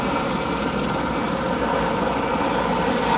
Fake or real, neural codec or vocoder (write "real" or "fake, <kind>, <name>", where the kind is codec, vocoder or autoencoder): real